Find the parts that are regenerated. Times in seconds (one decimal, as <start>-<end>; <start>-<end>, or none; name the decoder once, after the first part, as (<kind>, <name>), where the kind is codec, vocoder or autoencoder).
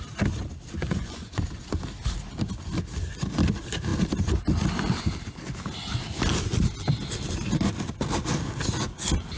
0.8-1.4 (vocoder, Vocos)